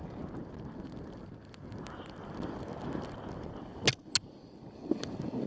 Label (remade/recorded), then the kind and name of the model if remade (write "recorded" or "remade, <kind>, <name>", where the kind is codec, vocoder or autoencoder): recorded